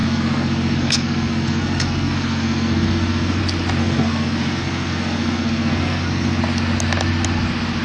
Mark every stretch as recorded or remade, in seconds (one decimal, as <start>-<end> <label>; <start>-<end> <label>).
0.0-3.4 remade; 3.4-3.8 recorded; 3.8-6.4 remade; 6.4-7.8 recorded